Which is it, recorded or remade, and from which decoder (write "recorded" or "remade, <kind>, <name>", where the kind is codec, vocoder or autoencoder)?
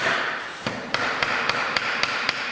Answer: remade, vocoder, BigVGAN v2